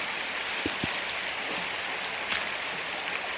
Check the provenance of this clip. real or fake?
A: real